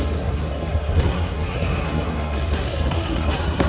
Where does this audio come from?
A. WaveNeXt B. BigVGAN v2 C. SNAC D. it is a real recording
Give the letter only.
C